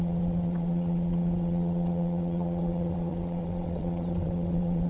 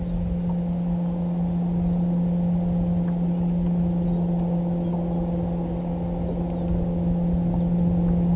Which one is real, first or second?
second